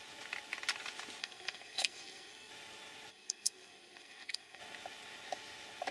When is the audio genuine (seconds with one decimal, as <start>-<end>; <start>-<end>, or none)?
0.0-1.2; 2.5-3.1; 4.6-5.9